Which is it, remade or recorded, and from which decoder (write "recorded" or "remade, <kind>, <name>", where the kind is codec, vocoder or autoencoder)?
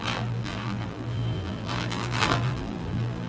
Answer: remade, vocoder, BigVGAN v2